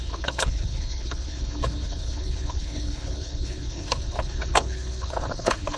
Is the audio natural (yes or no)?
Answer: no